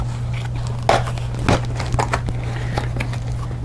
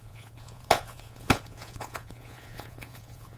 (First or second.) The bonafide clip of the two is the first